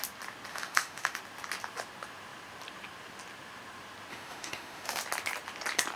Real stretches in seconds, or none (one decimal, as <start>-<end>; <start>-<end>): 0.0-0.5; 1.2-4.1; 5.0-6.0